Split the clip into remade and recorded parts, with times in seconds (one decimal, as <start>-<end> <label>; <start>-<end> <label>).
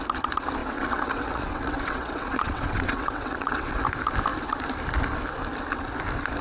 0.0-0.6 recorded; 0.6-3.8 remade; 3.8-6.4 recorded